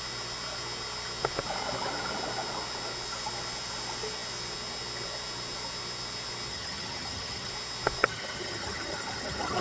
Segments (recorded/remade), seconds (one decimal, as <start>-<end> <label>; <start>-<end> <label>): 0.0-6.5 recorded; 6.5-7.5 remade; 7.5-8.0 recorded; 8.0-9.6 remade